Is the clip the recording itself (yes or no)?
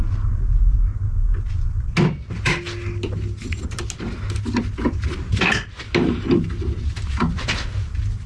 yes